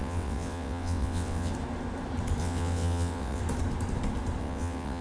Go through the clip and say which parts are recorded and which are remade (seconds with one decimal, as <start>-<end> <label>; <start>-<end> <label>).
0.0-1.5 remade; 1.5-2.4 recorded; 2.4-3.4 remade; 3.4-4.4 recorded; 4.4-5.0 remade